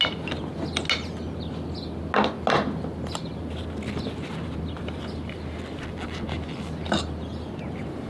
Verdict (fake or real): real